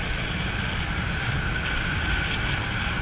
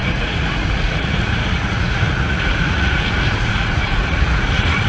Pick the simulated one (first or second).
second